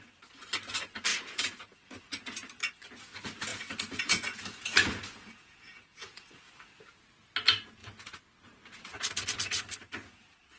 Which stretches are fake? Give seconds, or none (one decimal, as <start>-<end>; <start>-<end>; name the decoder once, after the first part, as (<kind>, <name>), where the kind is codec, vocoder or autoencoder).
1.1-1.8 (vocoder, Vocos); 3.5-6.5